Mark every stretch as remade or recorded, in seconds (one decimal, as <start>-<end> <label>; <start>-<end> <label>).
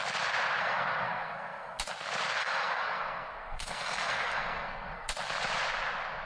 0.0-0.6 recorded; 0.6-1.8 remade; 1.8-2.4 recorded; 2.4-5.1 remade; 5.1-6.3 recorded